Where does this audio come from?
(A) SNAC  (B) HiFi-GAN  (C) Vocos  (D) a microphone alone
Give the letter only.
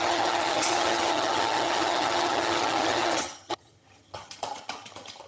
B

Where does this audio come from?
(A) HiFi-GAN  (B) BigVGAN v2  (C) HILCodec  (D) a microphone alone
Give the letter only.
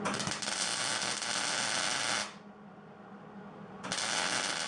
D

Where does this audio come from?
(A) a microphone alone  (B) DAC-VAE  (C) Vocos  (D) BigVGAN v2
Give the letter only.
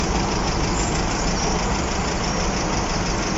A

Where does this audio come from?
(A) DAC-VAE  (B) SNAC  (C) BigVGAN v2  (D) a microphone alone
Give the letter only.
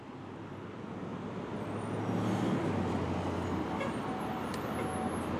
D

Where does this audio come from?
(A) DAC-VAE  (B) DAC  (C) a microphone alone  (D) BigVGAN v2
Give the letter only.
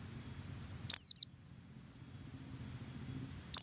C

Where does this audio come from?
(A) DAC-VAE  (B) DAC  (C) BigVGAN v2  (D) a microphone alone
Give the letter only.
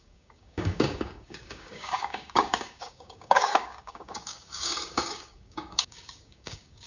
B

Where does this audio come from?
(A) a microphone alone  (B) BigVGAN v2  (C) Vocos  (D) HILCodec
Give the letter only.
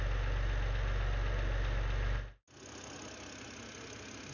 A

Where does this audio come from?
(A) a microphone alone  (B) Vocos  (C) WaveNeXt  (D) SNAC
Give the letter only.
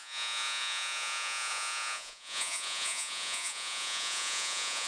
B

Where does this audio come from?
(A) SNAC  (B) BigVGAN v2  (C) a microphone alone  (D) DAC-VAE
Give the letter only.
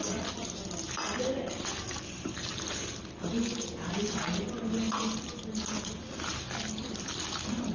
C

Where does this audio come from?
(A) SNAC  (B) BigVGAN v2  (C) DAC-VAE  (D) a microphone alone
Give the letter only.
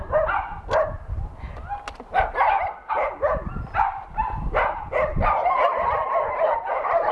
D